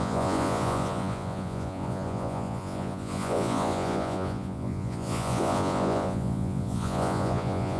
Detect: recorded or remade remade